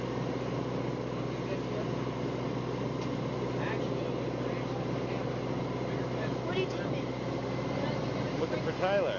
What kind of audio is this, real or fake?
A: real